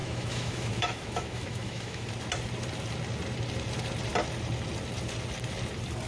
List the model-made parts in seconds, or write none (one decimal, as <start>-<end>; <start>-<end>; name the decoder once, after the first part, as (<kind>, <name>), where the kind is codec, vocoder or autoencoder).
0.0-2.1 (autoencoder, DAC-VAE)